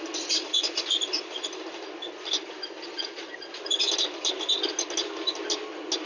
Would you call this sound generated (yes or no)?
no